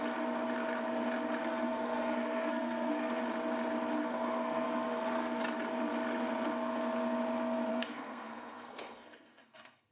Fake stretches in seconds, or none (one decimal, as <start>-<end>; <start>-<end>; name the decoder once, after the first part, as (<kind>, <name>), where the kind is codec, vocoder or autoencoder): 1.4-3.1 (codec, SNAC); 4.0-5.4; 7.7-9.9